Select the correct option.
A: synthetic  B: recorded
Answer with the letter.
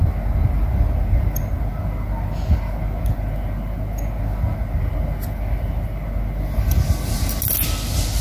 B